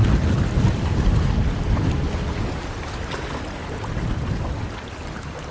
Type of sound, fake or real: real